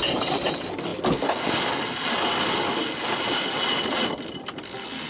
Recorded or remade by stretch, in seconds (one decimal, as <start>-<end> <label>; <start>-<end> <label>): 0.0-5.1 recorded